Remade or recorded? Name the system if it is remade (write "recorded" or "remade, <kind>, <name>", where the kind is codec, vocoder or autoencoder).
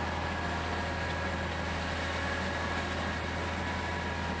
recorded